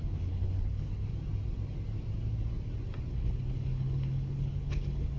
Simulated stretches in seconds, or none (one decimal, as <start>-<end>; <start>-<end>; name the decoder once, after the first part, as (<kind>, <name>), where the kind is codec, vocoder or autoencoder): 0.0-1.1 (codec, HILCodec); 3.1-5.2